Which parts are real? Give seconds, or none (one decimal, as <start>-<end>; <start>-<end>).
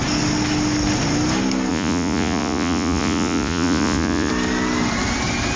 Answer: 0.0-1.7; 4.3-5.6